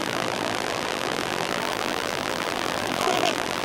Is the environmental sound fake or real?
fake